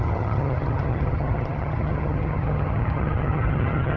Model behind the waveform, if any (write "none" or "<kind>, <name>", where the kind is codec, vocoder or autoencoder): vocoder, HiFi-GAN